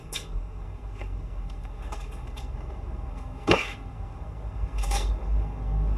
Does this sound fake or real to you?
fake